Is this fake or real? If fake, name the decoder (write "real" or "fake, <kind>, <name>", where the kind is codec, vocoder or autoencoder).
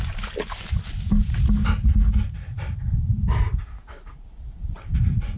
real